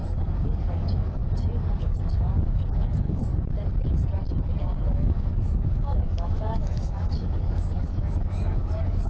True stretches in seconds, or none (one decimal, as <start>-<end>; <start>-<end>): 1.2-1.8; 3.3-4.6